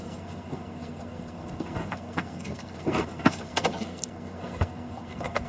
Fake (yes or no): yes